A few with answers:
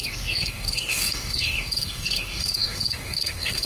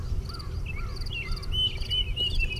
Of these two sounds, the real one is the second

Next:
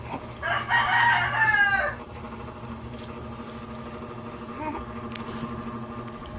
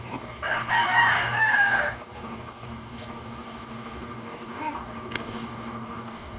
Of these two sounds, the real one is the first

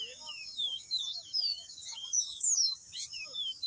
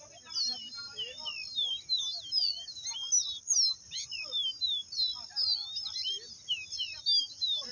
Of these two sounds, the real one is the second